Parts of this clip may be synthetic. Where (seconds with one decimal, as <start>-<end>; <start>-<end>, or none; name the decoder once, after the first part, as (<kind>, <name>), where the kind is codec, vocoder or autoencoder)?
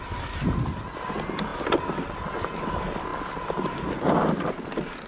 none